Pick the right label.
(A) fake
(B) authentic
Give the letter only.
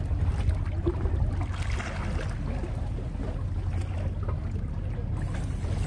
B